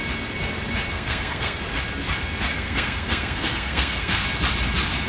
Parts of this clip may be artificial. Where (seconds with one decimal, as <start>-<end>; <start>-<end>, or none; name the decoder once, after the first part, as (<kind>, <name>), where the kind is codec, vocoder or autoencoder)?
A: 0.9-1.6 (codec, SNAC); 2.5-4.2